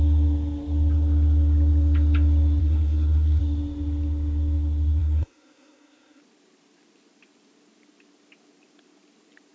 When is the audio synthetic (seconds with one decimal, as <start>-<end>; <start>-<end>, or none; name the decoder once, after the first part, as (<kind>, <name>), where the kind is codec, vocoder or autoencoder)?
2.6-3.4 (codec, SNAC); 5.0-6.2